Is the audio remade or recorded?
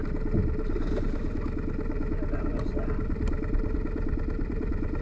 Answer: recorded